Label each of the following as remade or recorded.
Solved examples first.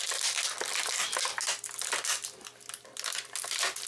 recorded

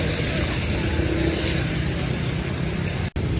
recorded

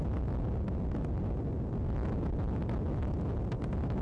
recorded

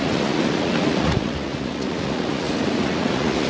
remade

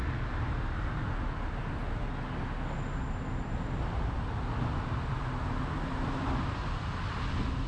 recorded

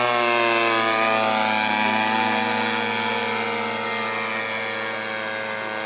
recorded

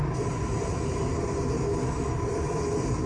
recorded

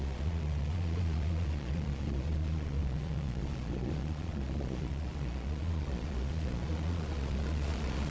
remade